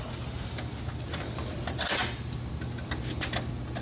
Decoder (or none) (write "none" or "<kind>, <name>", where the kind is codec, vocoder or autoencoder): none